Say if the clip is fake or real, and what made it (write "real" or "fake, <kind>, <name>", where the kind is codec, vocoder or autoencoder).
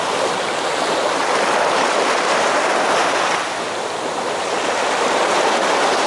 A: real